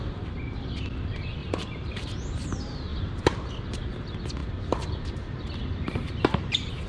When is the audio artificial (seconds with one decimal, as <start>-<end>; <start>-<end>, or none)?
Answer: 1.4-2.3; 2.9-3.5; 4.4-5.4